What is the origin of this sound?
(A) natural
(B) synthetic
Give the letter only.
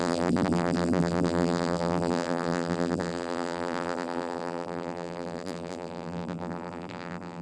B